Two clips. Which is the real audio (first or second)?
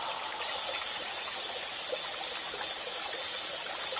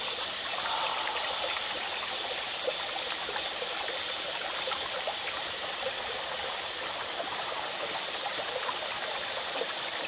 first